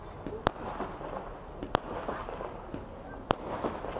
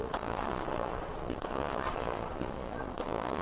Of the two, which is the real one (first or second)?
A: first